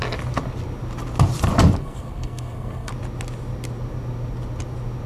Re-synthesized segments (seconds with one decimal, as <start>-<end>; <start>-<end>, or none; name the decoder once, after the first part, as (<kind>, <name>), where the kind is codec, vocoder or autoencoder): 1.8-2.9 (codec, SNAC)